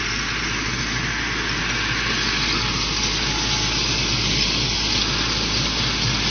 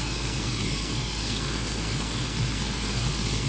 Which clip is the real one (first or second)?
first